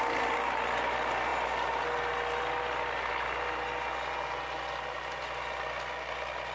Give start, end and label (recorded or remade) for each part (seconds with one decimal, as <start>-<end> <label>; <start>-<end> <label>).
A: 0.0-6.5 recorded